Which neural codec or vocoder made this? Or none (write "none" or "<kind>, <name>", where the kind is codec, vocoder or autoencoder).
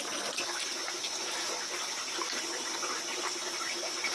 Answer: none